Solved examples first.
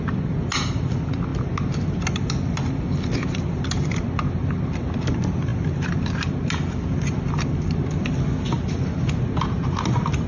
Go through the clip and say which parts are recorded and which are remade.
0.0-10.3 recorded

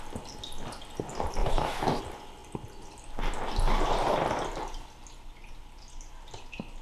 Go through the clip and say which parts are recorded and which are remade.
0.0-1.4 recorded; 1.4-2.0 remade; 2.0-6.8 recorded

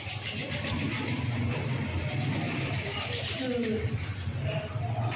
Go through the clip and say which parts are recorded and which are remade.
0.0-0.4 recorded; 0.4-3.5 remade; 3.5-4.1 recorded; 4.1-5.2 remade

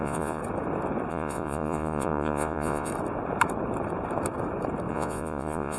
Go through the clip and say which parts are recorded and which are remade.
0.0-0.4 remade; 0.4-1.1 recorded; 1.1-2.9 remade; 2.9-4.9 recorded; 4.9-5.8 remade

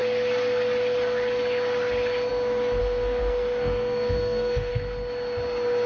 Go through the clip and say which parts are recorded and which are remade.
0.0-2.8 recorded; 2.8-4.7 remade; 4.7-5.9 recorded

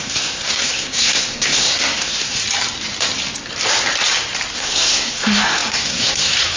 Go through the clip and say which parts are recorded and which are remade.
0.0-2.4 remade; 2.4-4.5 recorded; 4.5-6.6 remade